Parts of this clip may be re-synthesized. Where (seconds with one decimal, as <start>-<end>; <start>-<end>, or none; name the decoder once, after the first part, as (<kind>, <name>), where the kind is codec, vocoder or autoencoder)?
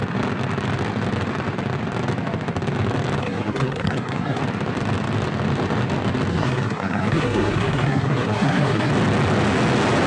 3.2-4.4 (codec, SNAC); 6.3-8.9